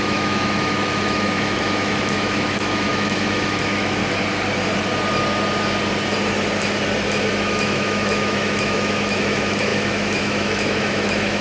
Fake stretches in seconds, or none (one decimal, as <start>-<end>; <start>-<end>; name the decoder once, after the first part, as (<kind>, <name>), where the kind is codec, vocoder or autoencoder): 0.0-4.0 (autoencoder, DAC-VAE); 7.3-11.4

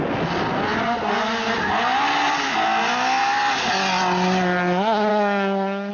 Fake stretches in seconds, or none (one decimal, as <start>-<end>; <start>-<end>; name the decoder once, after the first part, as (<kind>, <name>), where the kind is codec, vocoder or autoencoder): 5.1-5.9 (autoencoder, DAC-VAE)

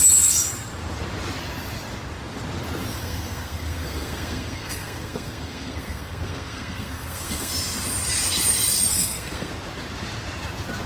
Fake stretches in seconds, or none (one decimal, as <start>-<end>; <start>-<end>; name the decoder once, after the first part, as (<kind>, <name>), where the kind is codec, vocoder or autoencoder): 2.9-7.5 (codec, SNAC); 8.9-9.5

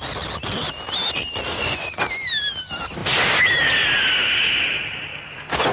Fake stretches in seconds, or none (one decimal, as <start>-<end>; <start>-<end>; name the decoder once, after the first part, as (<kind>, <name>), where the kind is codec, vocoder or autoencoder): 1.5-2.0 (vocoder, Vocos)

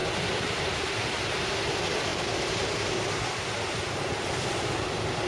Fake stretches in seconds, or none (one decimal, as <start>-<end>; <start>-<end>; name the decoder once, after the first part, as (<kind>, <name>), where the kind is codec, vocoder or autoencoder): 2.1-2.9 (vocoder, BigVGAN v2)

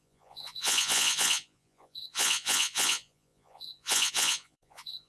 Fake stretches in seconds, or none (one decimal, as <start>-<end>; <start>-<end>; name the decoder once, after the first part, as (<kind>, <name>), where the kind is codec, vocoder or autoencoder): 0.0-5.1 (vocoder, Vocos)

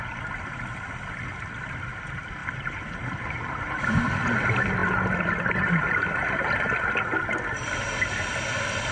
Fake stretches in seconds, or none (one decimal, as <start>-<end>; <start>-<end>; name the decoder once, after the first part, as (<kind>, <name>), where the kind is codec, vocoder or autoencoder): 2.4-4.0 (vocoder, BigVGAN v2)